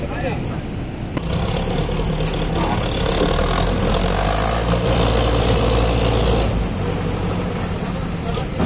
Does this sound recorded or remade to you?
recorded